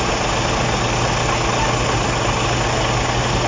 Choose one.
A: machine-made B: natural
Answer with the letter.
B